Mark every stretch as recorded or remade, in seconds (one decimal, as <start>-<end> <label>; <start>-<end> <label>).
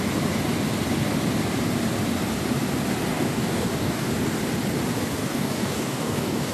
0.0-3.1 recorded; 3.1-4.1 remade; 4.1-5.2 recorded; 5.2-6.5 remade